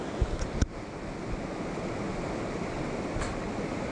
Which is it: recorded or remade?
recorded